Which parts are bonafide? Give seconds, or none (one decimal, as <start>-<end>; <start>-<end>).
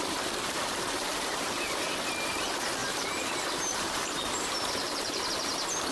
0.0-0.4; 1.9-2.8; 5.3-5.9